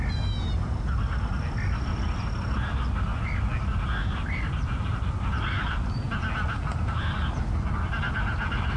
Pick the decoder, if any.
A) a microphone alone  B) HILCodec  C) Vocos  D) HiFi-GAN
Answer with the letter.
A